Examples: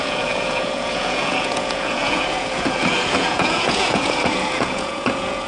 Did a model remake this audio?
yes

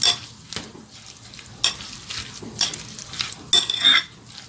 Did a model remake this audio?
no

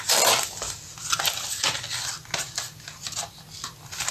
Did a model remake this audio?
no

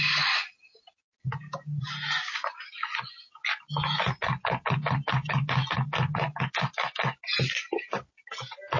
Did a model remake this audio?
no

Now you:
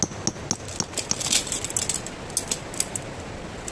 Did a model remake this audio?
no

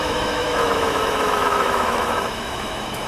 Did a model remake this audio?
yes